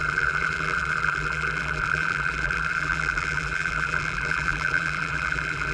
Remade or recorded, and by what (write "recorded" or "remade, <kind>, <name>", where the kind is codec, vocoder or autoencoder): remade, vocoder, BigVGAN v2